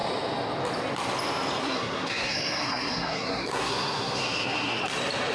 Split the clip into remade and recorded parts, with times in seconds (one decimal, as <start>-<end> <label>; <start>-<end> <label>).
0.0-1.6 recorded; 1.6-4.8 remade; 4.8-5.3 recorded